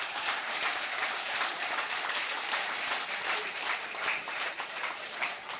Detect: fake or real fake